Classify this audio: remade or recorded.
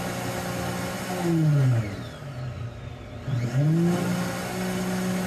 recorded